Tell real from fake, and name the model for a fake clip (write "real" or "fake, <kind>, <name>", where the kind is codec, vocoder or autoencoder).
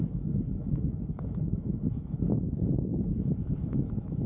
fake, autoencoder, DAC-VAE